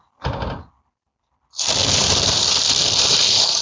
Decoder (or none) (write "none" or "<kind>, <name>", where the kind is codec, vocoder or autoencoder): vocoder, BigVGAN v2